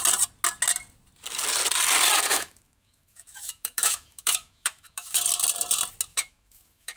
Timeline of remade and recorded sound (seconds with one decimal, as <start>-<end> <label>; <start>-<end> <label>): 0.0-2.3 recorded; 2.3-5.2 remade; 5.2-6.1 recorded; 6.1-7.0 remade